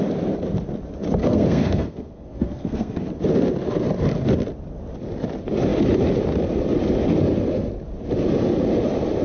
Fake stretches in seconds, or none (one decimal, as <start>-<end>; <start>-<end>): 1.2-3.1

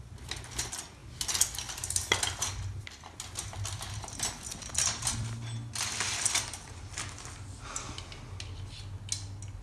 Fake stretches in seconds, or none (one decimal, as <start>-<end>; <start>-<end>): none

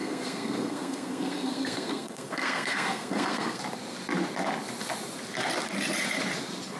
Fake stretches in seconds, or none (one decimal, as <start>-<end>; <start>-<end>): 0.0-3.6